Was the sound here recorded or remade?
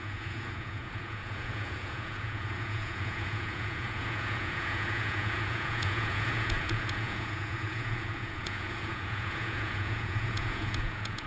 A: remade